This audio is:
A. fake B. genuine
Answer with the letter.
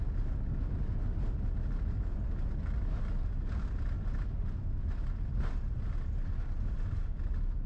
B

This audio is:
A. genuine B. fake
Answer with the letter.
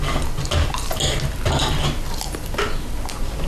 A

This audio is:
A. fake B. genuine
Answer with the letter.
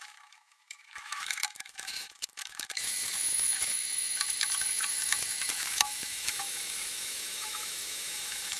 A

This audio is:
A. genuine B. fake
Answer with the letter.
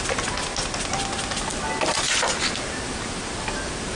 A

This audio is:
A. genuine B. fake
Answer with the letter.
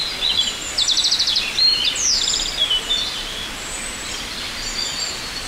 A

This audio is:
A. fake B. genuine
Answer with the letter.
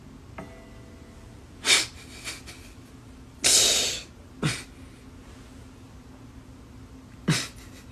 B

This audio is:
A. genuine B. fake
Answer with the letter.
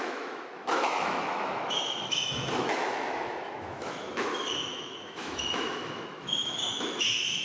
B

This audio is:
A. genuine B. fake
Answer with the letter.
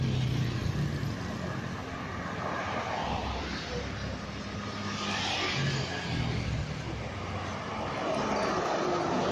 A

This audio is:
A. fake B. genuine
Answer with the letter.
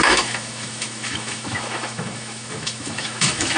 A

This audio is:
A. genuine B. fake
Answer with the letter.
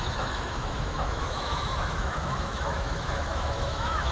B